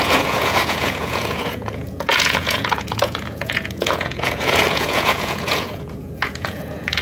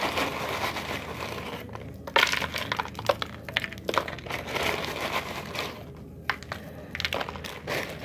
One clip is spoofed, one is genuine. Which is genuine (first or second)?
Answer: second